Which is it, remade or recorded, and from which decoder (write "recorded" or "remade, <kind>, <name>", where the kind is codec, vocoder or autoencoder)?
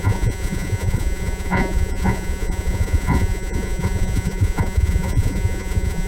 remade, vocoder, Vocos